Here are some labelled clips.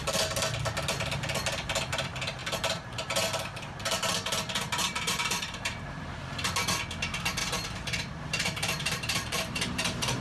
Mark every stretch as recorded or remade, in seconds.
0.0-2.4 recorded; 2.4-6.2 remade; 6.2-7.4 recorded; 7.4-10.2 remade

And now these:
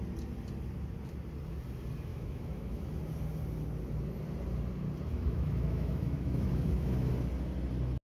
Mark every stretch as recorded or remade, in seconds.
0.0-2.1 recorded; 2.1-2.9 remade; 2.9-5.1 recorded; 5.1-7.1 remade; 7.1-8.0 recorded

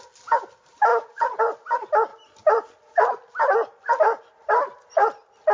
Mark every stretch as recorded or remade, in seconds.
0.0-0.9 recorded; 0.9-1.4 remade; 1.4-5.5 recorded